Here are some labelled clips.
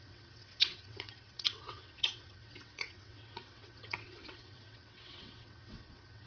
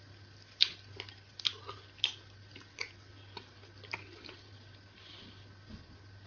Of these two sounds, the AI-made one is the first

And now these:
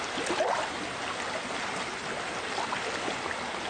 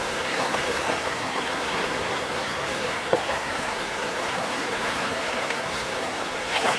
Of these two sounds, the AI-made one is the second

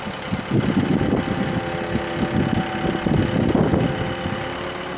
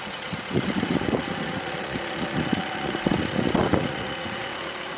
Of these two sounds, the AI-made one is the second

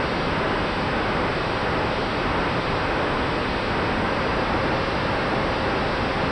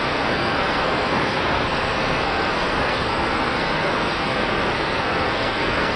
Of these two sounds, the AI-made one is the second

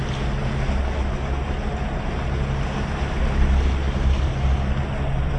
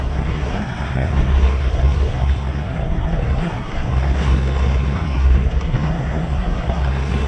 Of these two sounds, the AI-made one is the second